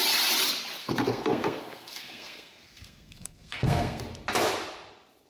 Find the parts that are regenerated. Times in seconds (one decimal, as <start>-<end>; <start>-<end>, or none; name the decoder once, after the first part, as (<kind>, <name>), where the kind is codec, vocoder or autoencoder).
0.8-4.0 (codec, SNAC)